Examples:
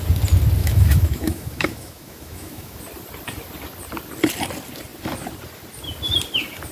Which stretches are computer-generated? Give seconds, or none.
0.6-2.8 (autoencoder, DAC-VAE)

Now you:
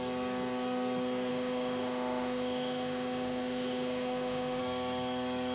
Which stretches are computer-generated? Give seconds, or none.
1.3-4.6 (autoencoder, DAC-VAE)

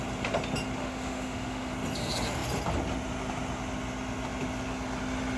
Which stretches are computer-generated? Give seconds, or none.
0.8-1.7 (autoencoder, DAC-VAE)

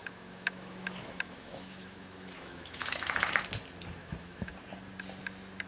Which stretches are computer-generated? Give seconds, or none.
0.0-3.4 (autoencoder, DAC-VAE); 4.0-4.5

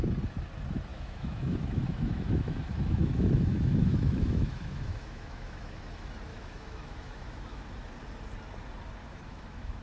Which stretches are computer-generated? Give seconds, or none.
0.9-5.8 (autoencoder, DAC-VAE); 6.3-7.6; 9.0-9.8

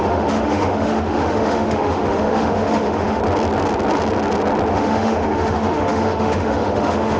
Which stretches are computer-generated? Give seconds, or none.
0.0-3.2 (autoencoder, DAC-VAE); 4.7-7.2